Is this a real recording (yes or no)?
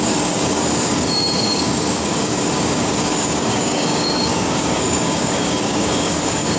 no